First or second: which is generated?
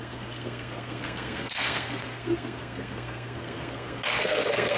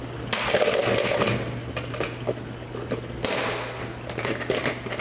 first